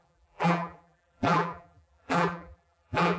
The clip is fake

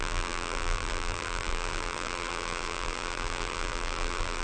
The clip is fake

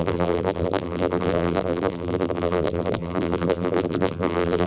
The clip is fake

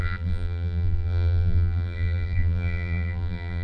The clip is fake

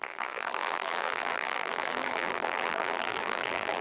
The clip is fake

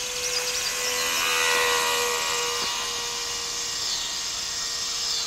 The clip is fake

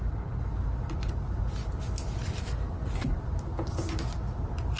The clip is real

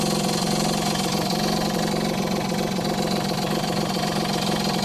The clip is real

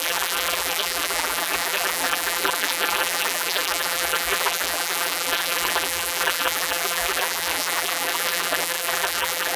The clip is fake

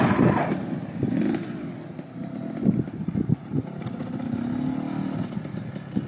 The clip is real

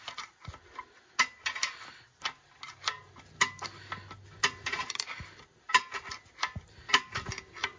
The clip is real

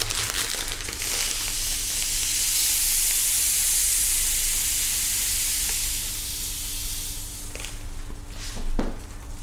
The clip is real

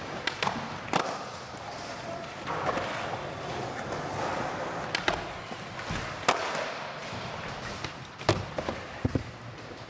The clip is real